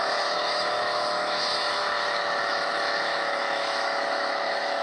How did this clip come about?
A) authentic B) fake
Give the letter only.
B